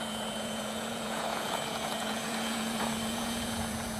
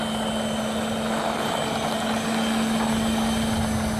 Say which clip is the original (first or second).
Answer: second